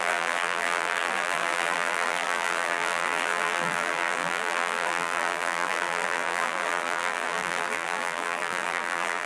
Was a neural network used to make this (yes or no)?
yes